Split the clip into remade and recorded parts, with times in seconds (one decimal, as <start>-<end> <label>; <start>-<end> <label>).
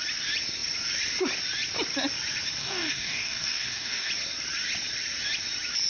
0.0-2.6 recorded; 2.6-4.1 remade; 4.1-5.9 recorded